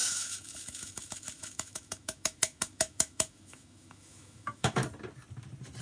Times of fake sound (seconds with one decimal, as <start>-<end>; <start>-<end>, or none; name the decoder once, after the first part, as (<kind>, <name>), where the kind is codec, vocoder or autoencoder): 0.0-4.8 (autoencoder, DAC-VAE)